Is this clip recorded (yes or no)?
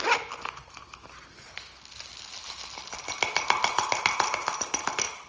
yes